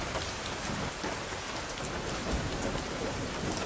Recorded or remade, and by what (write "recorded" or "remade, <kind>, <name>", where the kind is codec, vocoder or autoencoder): recorded